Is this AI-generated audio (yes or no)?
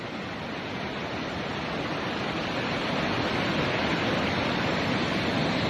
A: no